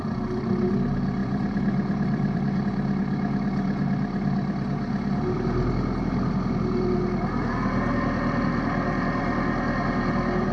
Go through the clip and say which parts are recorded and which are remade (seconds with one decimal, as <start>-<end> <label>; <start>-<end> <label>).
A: 0.0-1.2 recorded; 1.2-2.6 remade; 2.6-10.5 recorded